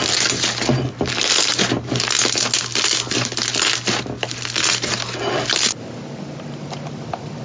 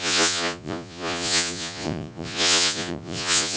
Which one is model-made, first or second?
second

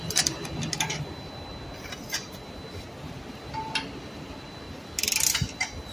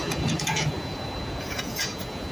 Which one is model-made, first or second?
second